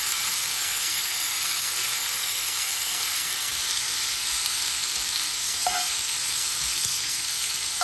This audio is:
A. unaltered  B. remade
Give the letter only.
B